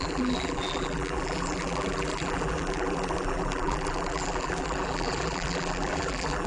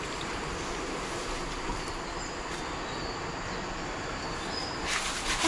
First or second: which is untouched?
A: second